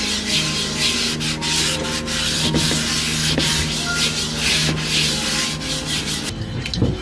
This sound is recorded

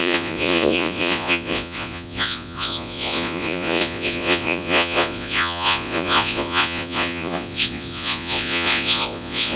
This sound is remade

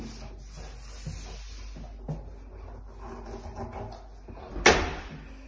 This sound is recorded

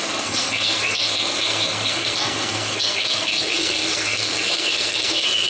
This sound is remade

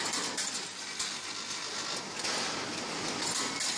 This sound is recorded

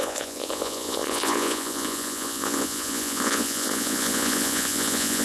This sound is remade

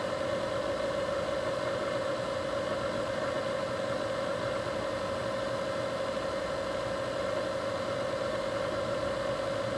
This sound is recorded